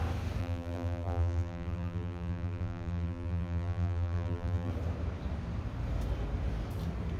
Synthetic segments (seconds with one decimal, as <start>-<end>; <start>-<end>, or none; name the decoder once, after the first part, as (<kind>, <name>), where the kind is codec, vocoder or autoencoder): 0.4-4.7 (vocoder, BigVGAN v2)